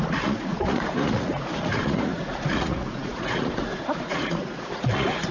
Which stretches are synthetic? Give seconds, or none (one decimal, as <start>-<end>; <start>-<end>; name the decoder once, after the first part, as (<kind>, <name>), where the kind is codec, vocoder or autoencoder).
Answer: 0.0-5.3 (vocoder, Vocos)